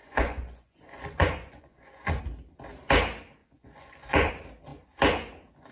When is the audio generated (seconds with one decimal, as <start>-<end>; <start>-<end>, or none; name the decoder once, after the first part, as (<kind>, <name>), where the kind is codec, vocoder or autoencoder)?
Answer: 0.0-2.2 (vocoder, Vocos); 3.4-4.3